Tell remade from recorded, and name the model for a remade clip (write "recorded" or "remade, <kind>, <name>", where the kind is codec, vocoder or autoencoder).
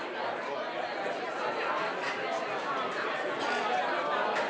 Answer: remade, vocoder, BigVGAN v2